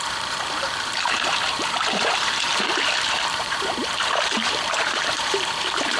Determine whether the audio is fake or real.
fake